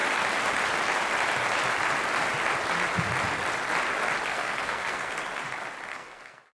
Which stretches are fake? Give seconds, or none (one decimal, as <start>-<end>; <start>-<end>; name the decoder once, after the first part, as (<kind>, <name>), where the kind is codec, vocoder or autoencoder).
4.3-5.1 (codec, SNAC); 5.9-6.6